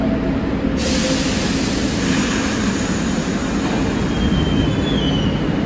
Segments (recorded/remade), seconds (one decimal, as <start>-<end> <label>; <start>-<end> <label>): 0.0-5.7 recorded